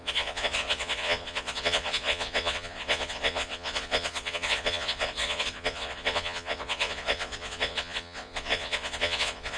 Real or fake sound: fake